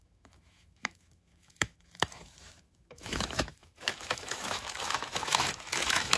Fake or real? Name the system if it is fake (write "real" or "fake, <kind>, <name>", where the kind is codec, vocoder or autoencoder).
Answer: fake, autoencoder, DAC-VAE